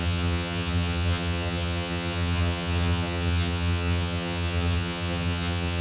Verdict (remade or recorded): remade